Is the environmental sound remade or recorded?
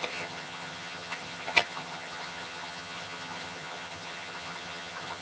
remade